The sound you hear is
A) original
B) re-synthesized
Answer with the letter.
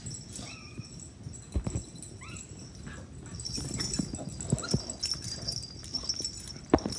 A